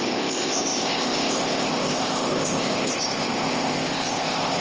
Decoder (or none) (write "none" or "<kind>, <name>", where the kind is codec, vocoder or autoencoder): codec, ZipCodec